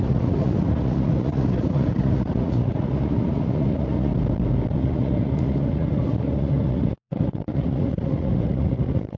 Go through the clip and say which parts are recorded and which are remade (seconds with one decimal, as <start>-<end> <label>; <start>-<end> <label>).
0.0-4.1 remade; 4.1-4.7 recorded; 4.7-9.2 remade